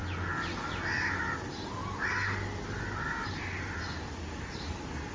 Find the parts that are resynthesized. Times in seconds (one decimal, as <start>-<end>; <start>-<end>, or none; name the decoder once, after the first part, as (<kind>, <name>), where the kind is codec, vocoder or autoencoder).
none